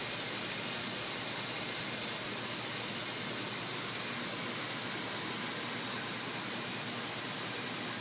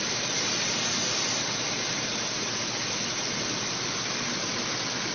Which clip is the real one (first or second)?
first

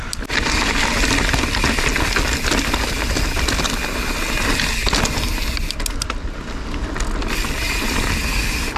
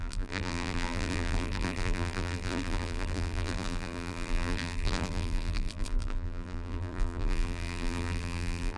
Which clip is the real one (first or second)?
first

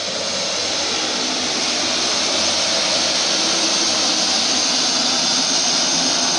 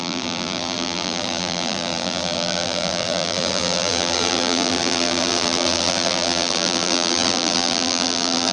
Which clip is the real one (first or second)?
first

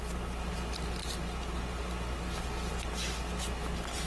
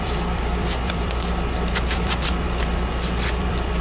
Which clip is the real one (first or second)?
first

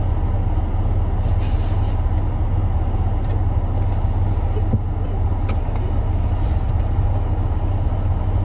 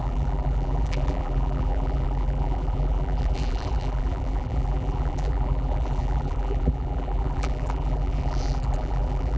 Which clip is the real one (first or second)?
first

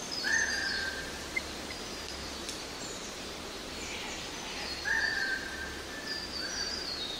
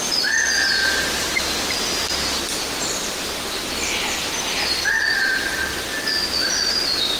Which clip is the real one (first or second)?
second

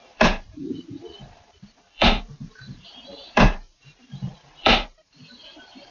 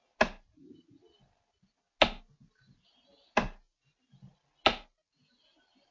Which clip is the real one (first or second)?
second